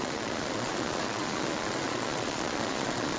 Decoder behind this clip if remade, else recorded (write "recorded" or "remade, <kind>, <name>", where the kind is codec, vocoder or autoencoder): remade, vocoder, Vocos